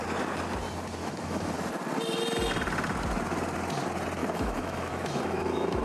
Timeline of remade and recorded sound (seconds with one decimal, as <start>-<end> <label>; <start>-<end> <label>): 0.0-1.0 recorded; 1.0-1.5 remade; 1.5-4.2 recorded; 4.2-5.8 remade

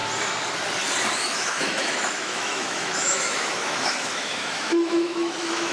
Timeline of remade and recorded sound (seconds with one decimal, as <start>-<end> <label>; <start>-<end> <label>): 0.0-1.1 recorded; 1.1-5.7 remade

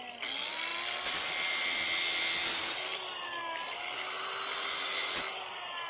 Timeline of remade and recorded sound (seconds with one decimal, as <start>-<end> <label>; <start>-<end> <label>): 0.0-5.9 recorded

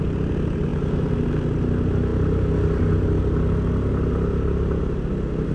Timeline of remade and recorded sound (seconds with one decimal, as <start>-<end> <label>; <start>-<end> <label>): 0.0-5.5 recorded

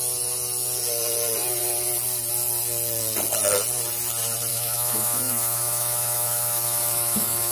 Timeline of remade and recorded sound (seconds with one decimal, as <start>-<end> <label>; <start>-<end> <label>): 0.0-4.5 recorded; 4.5-7.5 remade